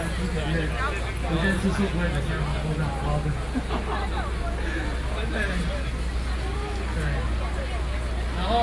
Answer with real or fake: real